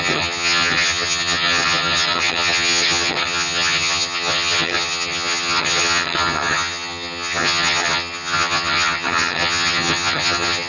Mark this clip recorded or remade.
remade